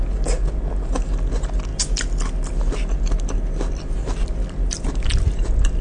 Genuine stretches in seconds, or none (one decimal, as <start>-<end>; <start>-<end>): 0.0-5.8